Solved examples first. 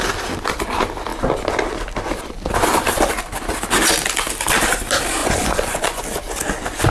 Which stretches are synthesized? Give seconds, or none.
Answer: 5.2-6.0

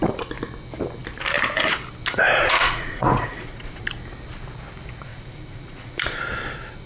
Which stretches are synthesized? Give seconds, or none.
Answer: 2.1-3.8; 5.1-6.2

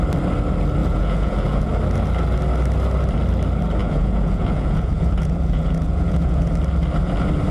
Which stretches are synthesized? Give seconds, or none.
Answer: 0.8-1.7; 3.8-6.5